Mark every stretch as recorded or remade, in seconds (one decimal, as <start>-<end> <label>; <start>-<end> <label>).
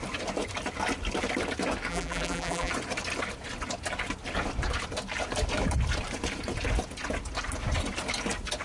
0.0-1.9 recorded; 1.9-2.7 remade; 2.7-8.6 recorded